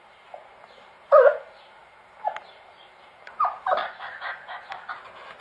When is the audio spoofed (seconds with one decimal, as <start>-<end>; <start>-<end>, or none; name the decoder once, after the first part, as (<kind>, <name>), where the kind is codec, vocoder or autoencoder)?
3.8-4.6 (vocoder, Vocos)

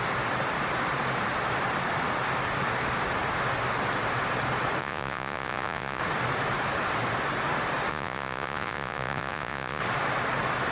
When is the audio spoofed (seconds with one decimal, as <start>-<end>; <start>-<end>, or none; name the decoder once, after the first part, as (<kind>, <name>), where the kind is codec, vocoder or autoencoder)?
4.8-6.0 (vocoder, Vocos); 7.9-9.8

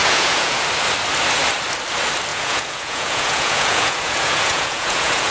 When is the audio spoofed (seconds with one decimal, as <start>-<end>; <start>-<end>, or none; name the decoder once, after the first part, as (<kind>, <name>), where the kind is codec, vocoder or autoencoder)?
0.0-0.6 (vocoder, Vocos); 2.3-5.3